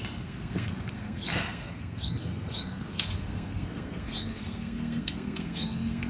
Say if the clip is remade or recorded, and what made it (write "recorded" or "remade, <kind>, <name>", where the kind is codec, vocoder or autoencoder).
remade, codec, SNAC